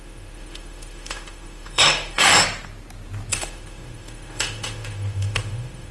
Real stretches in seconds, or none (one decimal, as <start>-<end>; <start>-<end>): 2.3-3.3